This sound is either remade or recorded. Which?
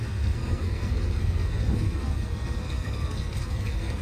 remade